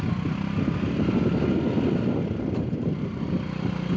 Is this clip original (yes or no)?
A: yes